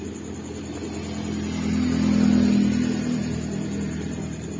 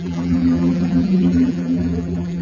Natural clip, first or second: first